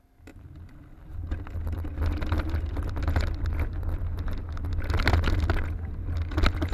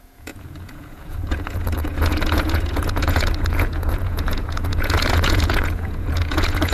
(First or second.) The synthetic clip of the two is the second